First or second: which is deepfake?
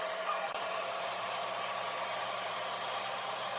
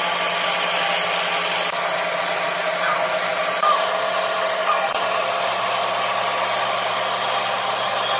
first